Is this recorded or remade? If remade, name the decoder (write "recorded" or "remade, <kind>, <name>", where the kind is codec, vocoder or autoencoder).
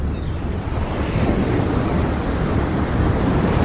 remade, vocoder, BigVGAN v2